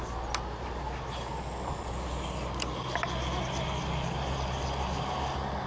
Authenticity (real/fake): real